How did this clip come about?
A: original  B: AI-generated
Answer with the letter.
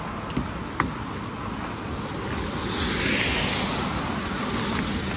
A